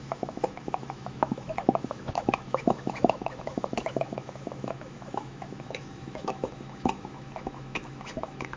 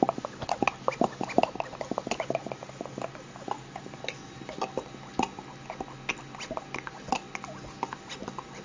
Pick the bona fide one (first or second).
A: second